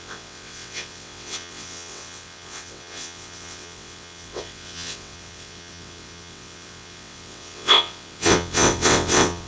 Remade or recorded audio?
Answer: remade